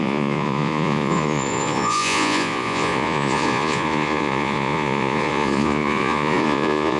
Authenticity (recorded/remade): remade